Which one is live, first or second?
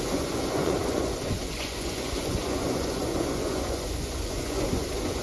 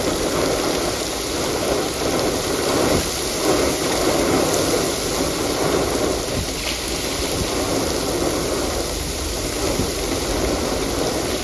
second